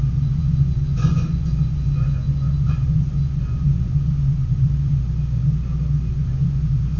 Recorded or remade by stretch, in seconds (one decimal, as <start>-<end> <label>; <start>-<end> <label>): 0.0-5.0 remade; 5.0-6.1 recorded; 6.1-7.0 remade